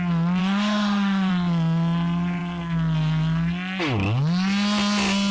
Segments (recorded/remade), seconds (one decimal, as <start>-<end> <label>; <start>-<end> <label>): 0.0-0.4 recorded; 0.4-1.3 remade; 1.3-5.3 recorded